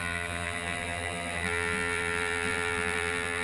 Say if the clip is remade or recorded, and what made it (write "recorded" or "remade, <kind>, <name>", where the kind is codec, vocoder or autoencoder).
remade, vocoder, BigVGAN v2